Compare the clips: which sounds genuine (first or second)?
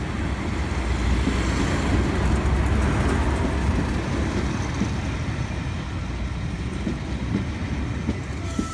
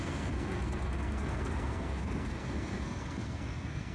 first